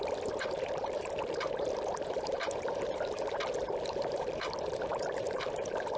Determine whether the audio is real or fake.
fake